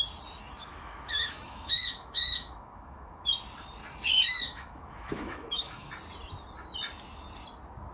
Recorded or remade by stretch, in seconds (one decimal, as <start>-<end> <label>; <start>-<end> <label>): 0.0-0.4 recorded; 0.4-3.3 remade; 3.3-3.8 recorded; 3.8-5.9 remade; 5.9-7.9 recorded